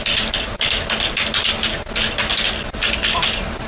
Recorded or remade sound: recorded